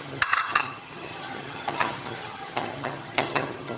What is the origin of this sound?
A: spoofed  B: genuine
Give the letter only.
A